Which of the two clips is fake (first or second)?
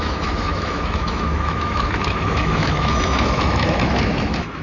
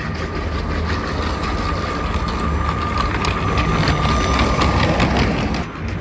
first